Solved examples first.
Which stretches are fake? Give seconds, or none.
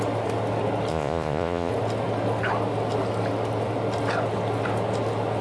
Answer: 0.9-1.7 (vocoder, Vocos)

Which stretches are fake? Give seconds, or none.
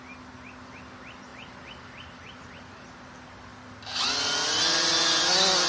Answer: none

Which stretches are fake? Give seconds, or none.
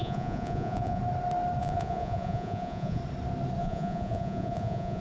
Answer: 0.0-1.0 (vocoder, Vocos); 1.6-3.0; 3.6-5.0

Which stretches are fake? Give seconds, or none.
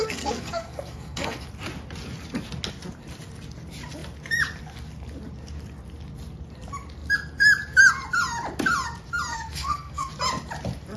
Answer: 0.0-1.4 (codec, SNAC); 9.3-10.1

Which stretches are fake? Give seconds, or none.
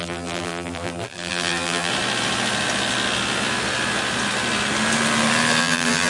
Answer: 0.0-1.9 (vocoder, BigVGAN v2); 5.6-6.1